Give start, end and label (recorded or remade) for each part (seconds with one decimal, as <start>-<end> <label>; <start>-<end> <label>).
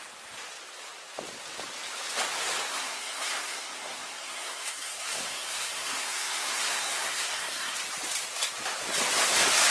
0.0-2.7 recorded; 2.7-7.7 remade; 7.7-9.7 recorded